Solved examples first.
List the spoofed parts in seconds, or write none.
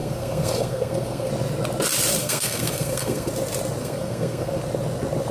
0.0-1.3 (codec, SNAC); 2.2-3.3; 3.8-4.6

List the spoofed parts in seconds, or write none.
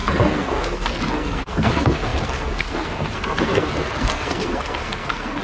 0.0-5.4 (codec, SNAC)